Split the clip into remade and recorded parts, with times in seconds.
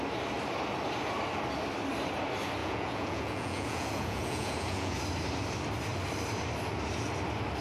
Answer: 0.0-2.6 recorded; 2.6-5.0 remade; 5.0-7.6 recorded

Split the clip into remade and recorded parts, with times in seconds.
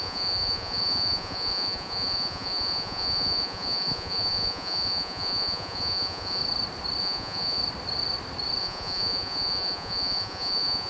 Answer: 0.0-6.4 remade; 6.4-7.0 recorded; 7.0-7.6 remade; 7.6-8.6 recorded; 8.6-10.9 remade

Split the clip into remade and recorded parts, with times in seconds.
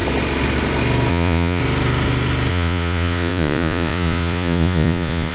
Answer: 0.0-1.1 recorded; 1.1-1.6 remade; 1.6-2.5 recorded; 2.5-5.3 remade